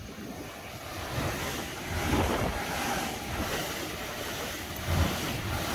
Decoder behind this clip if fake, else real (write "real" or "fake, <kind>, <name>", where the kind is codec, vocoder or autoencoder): real